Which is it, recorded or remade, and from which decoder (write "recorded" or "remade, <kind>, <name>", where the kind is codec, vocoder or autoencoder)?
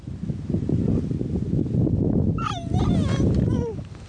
recorded